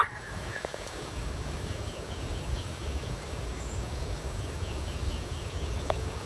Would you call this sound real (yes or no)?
no